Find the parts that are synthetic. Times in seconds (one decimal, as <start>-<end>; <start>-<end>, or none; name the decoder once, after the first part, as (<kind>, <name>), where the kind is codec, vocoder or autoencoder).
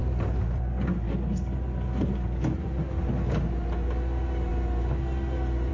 none